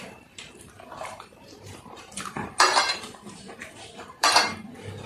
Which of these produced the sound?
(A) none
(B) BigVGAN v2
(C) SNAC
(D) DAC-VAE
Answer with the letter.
B